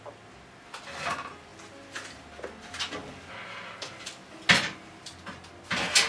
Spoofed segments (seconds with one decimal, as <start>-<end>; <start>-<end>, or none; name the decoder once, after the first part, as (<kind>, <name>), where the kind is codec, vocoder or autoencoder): none